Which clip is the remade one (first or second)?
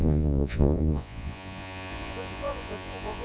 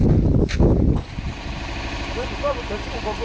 first